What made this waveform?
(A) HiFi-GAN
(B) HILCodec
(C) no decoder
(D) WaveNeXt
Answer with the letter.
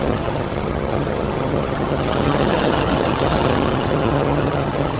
A